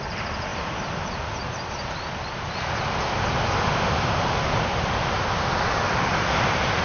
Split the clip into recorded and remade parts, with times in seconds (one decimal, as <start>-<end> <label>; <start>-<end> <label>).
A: 0.0-6.8 recorded